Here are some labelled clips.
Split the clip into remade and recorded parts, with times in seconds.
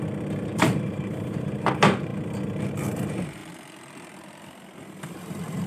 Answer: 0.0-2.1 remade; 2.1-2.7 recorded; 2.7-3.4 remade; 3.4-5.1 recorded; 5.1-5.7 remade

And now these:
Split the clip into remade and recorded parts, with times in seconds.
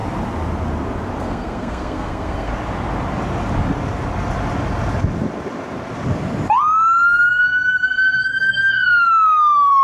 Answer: 0.0-1.2 recorded; 1.2-2.5 remade; 2.5-7.3 recorded; 7.3-9.8 remade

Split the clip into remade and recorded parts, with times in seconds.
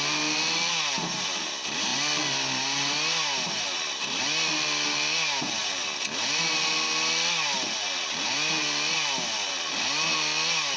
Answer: 0.0-10.8 recorded